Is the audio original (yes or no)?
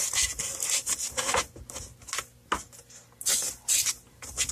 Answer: yes